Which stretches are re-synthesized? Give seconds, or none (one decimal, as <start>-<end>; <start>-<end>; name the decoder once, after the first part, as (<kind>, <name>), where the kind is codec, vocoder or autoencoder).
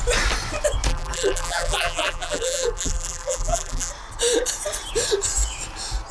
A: 0.9-3.9 (vocoder, BigVGAN v2)